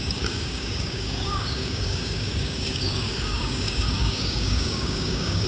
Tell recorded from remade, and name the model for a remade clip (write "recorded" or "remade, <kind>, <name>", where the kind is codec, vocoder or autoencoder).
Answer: remade, codec, DAC